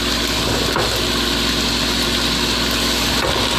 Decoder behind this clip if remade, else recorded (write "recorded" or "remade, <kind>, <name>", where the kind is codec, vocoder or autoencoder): recorded